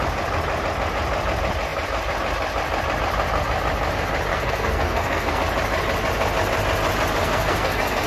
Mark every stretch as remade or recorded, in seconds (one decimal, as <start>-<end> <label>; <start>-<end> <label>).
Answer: 0.0-4.3 recorded; 4.3-5.4 remade; 5.4-7.2 recorded; 7.2-8.1 remade